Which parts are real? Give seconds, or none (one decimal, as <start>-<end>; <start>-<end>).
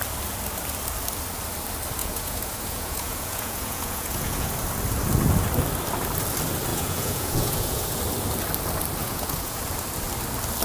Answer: 0.0-2.0; 4.5-6.7; 8.0-9.0; 9.6-10.6